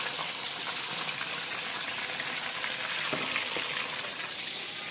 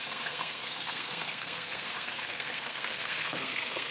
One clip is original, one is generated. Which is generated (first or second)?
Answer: second